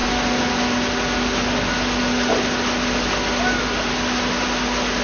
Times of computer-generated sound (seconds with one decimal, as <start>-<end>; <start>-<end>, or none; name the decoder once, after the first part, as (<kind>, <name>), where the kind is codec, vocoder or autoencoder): none